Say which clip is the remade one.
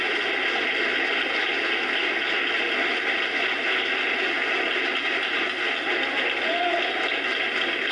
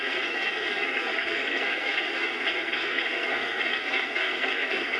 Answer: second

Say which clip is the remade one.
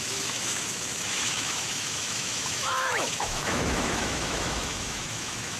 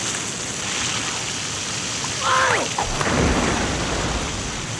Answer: first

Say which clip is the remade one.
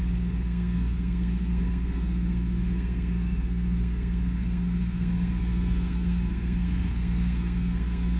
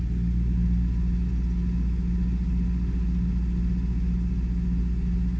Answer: first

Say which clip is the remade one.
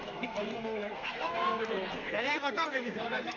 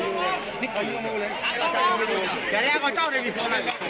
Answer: first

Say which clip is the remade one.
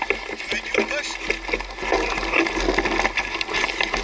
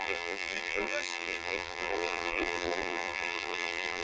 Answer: second